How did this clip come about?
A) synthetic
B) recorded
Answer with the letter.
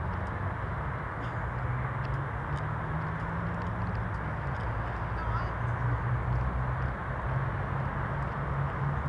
B